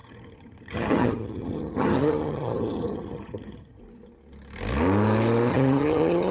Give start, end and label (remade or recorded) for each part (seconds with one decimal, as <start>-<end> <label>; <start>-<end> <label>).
0.0-3.8 remade; 3.8-5.5 recorded; 5.5-6.3 remade